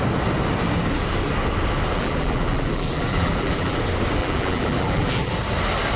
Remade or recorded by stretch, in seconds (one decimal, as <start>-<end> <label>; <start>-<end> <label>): 0.0-1.9 recorded; 1.9-3.8 remade; 3.8-4.2 recorded; 4.2-5.3 remade; 5.3-6.0 recorded